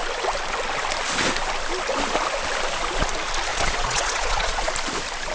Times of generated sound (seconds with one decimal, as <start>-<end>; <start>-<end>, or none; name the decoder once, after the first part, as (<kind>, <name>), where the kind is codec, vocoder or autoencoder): 3.5-4.7 (vocoder, Vocos)